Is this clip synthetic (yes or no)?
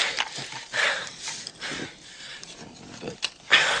yes